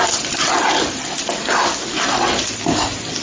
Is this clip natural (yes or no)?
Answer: yes